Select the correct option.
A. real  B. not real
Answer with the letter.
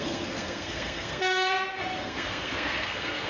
B